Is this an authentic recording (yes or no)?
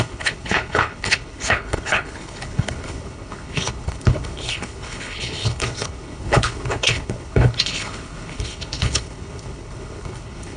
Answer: no